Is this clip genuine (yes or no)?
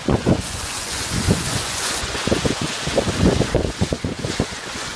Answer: no